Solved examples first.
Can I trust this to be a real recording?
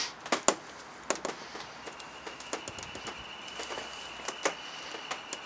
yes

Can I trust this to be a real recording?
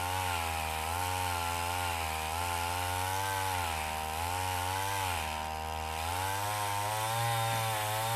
yes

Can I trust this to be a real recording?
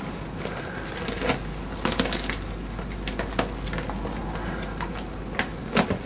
yes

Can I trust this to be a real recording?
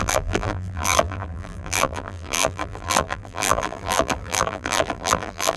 no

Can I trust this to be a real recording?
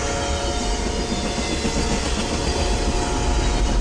yes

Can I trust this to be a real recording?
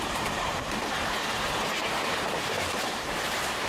no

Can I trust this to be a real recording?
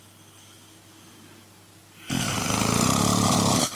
yes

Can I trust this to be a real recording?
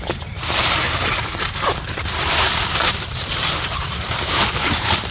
no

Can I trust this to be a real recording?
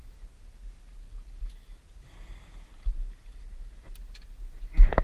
yes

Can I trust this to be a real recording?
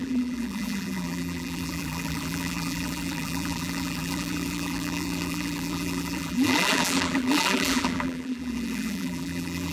no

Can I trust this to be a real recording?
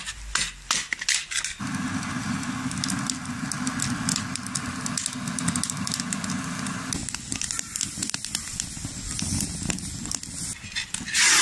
yes